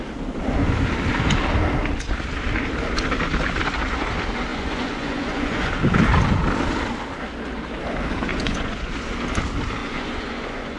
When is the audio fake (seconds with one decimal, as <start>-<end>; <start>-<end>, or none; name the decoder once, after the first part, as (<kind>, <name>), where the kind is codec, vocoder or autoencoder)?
4.5-5.7 (vocoder, Vocos); 8.3-8.9; 9.8-10.8